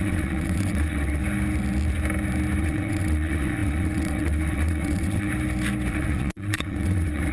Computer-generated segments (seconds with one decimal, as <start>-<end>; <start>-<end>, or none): 0.0-1.2; 2.6-5.3; 5.9-7.3